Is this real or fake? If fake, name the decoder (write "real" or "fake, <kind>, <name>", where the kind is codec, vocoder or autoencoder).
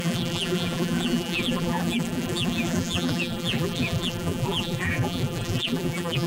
fake, vocoder, BigVGAN v2